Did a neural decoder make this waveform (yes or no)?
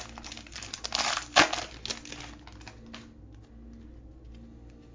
no